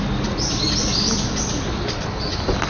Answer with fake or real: real